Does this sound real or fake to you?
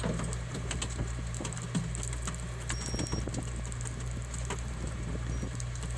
real